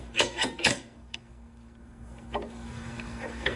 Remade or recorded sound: remade